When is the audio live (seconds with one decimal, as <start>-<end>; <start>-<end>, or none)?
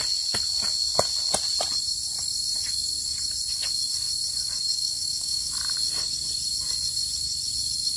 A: 0.0-4.7; 5.6-8.0